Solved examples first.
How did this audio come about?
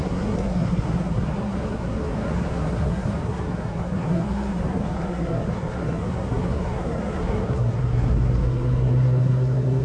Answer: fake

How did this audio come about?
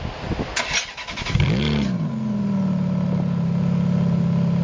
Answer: real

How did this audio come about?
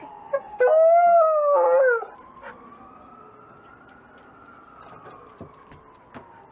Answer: real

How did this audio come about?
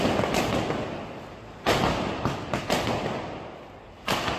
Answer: real